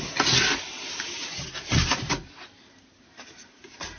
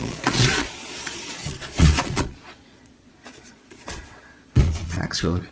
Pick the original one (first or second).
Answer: first